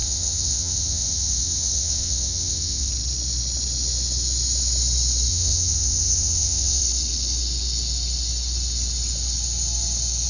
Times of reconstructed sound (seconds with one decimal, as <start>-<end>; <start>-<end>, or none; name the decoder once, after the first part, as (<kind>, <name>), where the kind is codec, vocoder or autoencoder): 0.0-2.9 (vocoder, WaveNeXt); 5.3-6.8